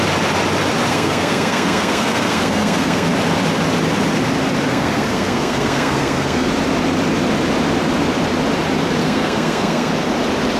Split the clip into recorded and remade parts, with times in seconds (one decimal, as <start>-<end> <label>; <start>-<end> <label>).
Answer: 0.0-0.9 recorded; 0.9-3.1 remade; 3.1-4.7 recorded; 4.7-6.5 remade; 6.5-9.0 recorded; 9.0-9.9 remade; 9.9-10.6 recorded